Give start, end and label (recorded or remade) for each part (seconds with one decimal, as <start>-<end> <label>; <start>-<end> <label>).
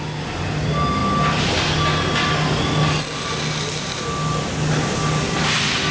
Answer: 0.0-5.9 recorded